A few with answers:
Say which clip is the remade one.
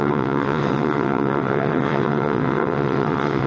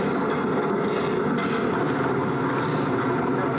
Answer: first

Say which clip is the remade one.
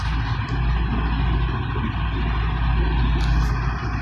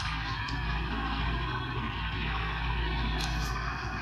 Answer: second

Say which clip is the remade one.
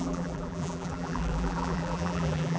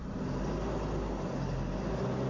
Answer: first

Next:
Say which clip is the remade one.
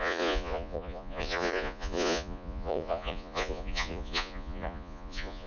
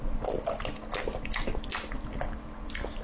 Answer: first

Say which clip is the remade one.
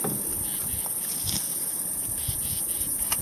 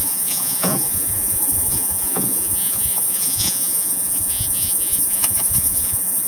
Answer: second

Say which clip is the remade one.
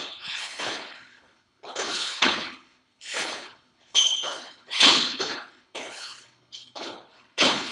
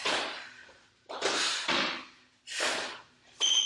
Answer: first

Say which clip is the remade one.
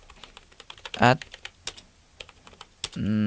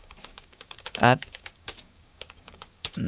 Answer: second